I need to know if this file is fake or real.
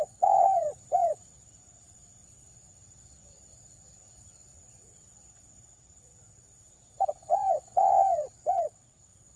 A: fake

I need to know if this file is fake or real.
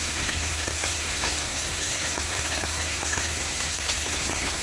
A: fake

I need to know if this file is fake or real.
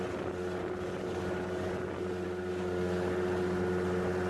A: real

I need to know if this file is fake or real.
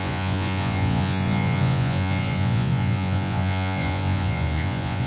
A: fake